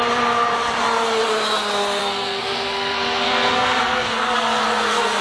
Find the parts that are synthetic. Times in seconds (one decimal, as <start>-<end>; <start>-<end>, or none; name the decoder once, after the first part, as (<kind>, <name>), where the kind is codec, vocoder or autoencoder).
2.0-5.2 (codec, SNAC)